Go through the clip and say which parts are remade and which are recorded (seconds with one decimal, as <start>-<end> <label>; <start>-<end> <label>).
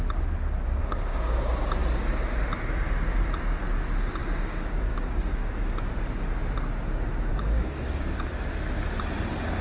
0.0-0.8 recorded; 0.8-1.4 remade; 1.4-4.2 recorded; 4.2-5.9 remade; 5.9-7.3 recorded; 7.3-8.3 remade; 8.3-9.6 recorded